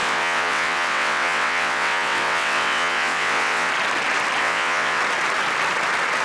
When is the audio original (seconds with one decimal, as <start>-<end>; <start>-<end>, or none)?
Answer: 3.7-4.4; 5.0-6.2